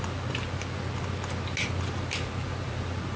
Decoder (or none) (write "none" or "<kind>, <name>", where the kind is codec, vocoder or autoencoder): none